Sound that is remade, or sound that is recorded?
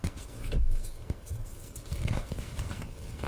remade